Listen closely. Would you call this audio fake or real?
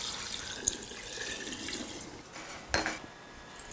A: real